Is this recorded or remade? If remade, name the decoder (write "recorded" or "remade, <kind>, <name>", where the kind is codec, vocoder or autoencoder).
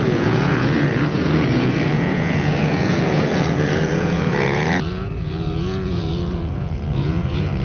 remade, vocoder, Vocos